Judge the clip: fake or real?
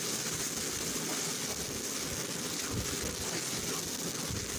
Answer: real